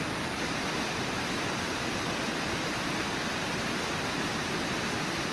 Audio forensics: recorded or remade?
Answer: remade